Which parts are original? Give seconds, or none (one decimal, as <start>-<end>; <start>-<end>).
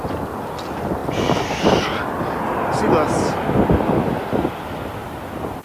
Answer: 0.0-5.6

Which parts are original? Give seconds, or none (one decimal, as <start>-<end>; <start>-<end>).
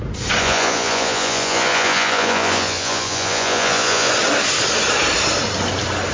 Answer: 0.0-0.4; 4.1-6.1